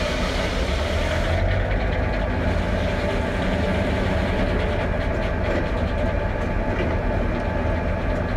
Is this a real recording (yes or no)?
yes